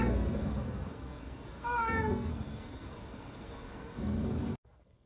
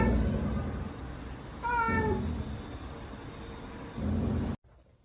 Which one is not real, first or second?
first